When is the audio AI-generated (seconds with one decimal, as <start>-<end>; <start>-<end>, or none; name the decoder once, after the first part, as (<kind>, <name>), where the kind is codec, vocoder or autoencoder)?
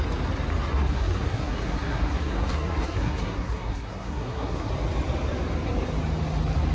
0.7-4.7 (codec, SNAC)